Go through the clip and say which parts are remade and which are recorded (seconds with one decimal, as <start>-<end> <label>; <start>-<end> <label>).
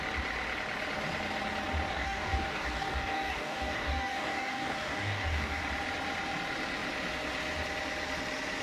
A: 0.0-1.9 recorded; 1.9-5.6 remade; 5.6-8.6 recorded